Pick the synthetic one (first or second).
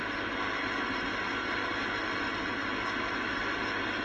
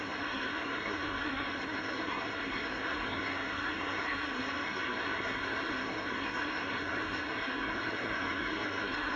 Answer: second